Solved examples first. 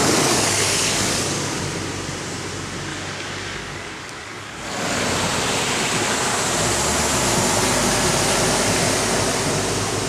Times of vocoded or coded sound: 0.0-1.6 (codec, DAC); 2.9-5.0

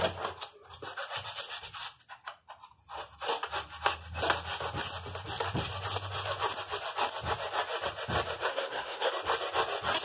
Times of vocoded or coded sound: 8.5-9.1 (codec, SNAC)

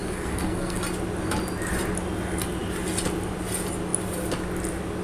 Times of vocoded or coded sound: 0.0-0.8 (codec, SNAC)

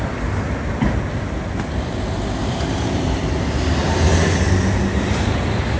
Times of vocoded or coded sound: 2.4-3.2 (vocoder, BigVGAN v2)

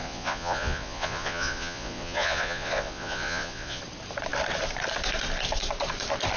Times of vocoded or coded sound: 0.0-3.8 (vocoder, Vocos)